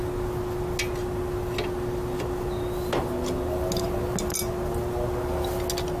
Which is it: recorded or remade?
recorded